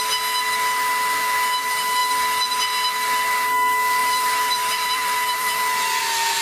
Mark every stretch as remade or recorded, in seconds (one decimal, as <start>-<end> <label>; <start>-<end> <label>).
0.0-4.0 recorded; 4.0-6.0 remade; 6.0-6.4 recorded